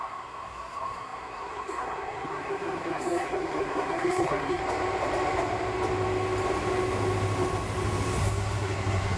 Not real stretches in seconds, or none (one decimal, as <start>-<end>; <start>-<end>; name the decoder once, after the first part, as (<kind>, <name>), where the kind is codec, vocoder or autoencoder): 0.0-4.6 (codec, SNAC); 8.2-9.2